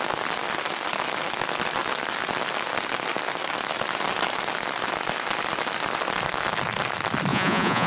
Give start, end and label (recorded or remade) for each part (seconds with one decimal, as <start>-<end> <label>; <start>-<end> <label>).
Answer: 0.0-7.3 recorded; 7.3-7.9 remade